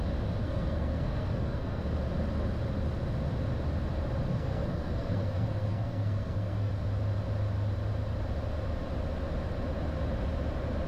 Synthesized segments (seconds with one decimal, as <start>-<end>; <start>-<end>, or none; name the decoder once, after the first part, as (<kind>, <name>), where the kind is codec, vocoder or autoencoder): 0.4-1.8 (codec, SNAC); 4.3-6.7